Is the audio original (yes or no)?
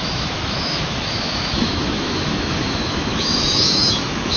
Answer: no